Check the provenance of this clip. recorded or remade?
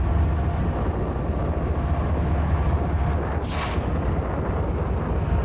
recorded